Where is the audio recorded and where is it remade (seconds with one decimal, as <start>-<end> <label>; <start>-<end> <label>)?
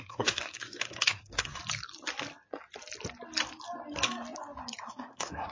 0.0-1.6 remade; 1.6-4.9 recorded; 4.9-5.5 remade